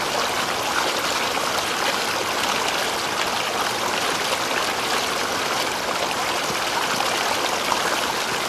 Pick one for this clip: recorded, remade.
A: recorded